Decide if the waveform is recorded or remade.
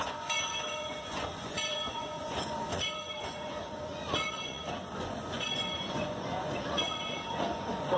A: remade